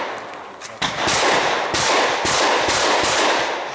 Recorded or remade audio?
recorded